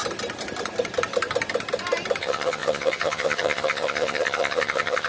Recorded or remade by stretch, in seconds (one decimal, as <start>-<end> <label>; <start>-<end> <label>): 0.0-2.2 recorded; 2.2-5.1 remade